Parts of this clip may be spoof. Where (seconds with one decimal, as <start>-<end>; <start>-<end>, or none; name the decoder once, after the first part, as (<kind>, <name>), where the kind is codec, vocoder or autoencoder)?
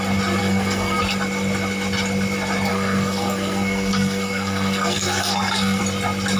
0.4-1.0 (codec, SNAC); 2.7-5.8